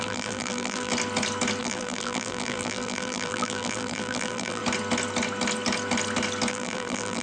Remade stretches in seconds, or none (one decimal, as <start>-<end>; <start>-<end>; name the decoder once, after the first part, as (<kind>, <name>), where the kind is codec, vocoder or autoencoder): 0.0-0.9 (vocoder, BigVGAN v2); 1.6-4.6; 6.5-7.2